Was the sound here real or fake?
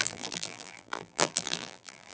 fake